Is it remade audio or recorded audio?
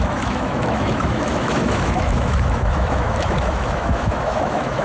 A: remade